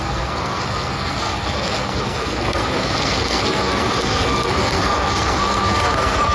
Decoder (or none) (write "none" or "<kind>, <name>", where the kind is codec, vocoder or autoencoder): codec, SNAC